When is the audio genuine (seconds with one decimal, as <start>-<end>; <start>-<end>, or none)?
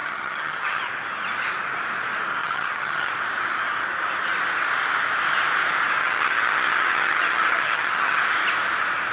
0.8-2.4; 3.1-6.0; 8.2-9.1